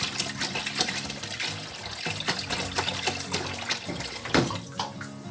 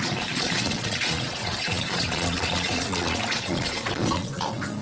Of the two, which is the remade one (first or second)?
second